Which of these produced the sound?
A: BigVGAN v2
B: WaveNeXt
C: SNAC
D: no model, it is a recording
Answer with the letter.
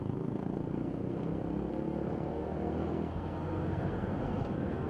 C